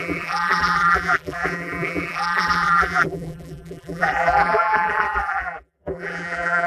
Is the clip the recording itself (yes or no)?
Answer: no